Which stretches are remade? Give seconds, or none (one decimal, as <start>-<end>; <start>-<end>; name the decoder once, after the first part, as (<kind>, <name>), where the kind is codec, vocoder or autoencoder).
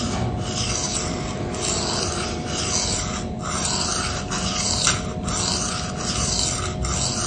none